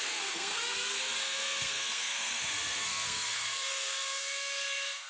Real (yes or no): no